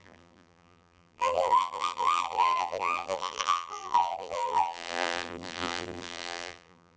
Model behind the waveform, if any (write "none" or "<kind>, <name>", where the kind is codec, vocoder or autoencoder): vocoder, BigVGAN v2